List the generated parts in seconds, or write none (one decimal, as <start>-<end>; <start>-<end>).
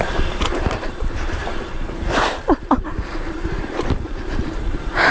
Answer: 0.0-1.4; 2.1-5.1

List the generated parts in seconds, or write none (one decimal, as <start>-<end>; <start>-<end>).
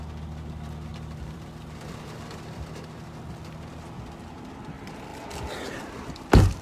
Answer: 0.9-3.0; 5.1-5.8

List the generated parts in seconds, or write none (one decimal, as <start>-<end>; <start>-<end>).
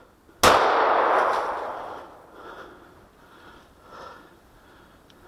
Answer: 3.2-5.3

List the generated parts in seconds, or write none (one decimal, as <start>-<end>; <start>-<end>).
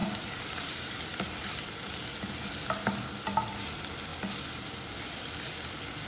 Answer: 0.0-1.0